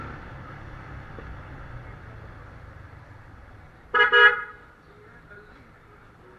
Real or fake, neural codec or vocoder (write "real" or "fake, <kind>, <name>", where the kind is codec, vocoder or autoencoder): real